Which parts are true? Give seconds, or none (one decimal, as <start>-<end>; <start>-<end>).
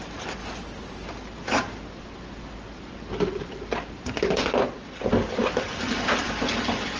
0.0-7.0